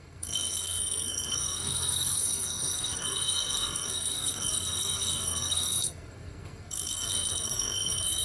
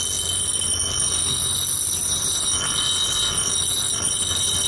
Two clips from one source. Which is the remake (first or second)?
first